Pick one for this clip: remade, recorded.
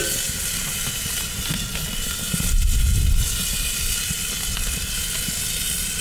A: recorded